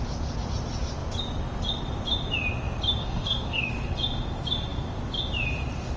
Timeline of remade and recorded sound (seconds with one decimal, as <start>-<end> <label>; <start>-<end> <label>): 0.0-3.0 recorded; 3.0-3.7 remade; 3.7-6.0 recorded